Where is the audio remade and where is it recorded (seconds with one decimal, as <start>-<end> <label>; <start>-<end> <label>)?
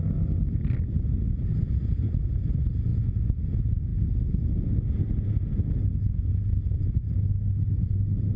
0.0-2.9 recorded; 2.9-3.4 remade; 3.4-8.4 recorded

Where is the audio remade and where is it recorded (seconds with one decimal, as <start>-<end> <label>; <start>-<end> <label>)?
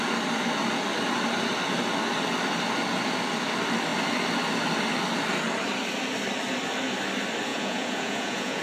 0.0-7.5 recorded; 7.5-8.6 remade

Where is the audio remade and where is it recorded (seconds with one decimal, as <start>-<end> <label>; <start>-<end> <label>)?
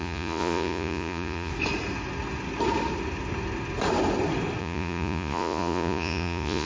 0.0-1.5 remade; 1.5-4.6 recorded; 4.6-6.7 remade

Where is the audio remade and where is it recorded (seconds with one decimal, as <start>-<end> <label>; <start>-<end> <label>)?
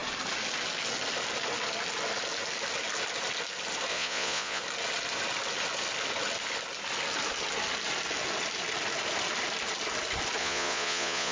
0.0-3.9 recorded; 3.9-4.6 remade; 4.6-10.4 recorded; 10.4-11.3 remade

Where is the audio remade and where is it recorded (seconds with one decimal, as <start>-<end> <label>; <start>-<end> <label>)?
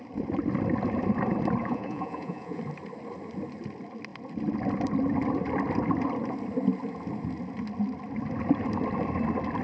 0.0-1.6 recorded; 1.6-2.6 remade; 2.6-9.6 recorded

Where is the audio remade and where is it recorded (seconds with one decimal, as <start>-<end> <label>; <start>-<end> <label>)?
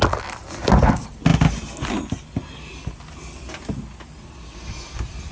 0.0-5.3 recorded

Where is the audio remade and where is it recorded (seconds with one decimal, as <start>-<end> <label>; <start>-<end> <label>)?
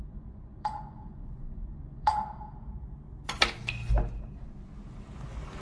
0.0-2.1 remade; 2.1-5.6 recorded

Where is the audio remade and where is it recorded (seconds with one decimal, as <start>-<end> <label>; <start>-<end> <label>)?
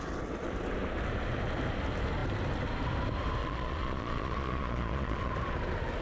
0.0-3.4 recorded; 3.4-5.3 remade; 5.3-6.0 recorded